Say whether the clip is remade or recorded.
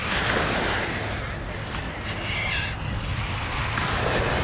recorded